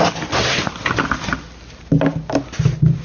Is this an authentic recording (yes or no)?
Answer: yes